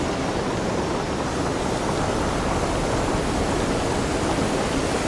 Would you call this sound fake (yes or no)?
no